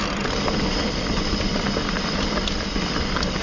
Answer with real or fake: real